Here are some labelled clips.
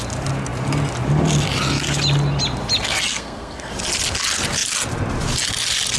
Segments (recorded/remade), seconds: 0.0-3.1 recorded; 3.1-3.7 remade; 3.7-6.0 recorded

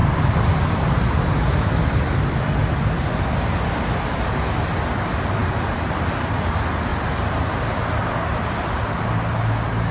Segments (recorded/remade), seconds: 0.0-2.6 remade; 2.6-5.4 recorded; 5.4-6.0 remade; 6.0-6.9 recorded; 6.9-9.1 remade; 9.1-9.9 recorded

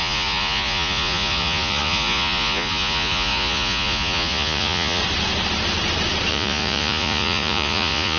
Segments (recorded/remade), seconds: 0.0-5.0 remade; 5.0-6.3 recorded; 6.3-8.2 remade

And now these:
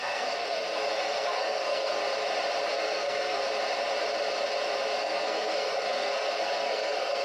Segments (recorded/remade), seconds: 0.0-2.0 remade; 2.0-2.7 recorded; 2.7-3.4 remade; 3.4-5.0 recorded; 5.0-7.2 remade